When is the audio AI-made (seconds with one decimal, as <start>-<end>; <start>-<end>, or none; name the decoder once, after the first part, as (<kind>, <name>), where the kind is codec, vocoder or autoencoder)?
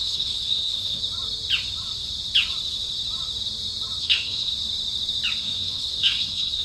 0.0-1.0 (codec, SNAC); 4.0-4.5; 5.4-6.6